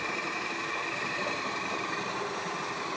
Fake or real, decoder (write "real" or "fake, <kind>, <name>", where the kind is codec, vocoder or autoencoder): fake, vocoder, BigVGAN v2